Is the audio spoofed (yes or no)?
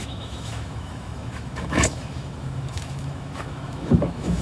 yes